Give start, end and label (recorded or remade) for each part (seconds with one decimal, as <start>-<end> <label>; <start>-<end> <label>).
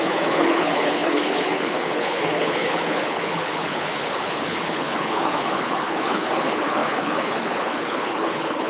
0.0-8.7 remade